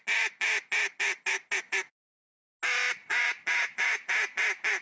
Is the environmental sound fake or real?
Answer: real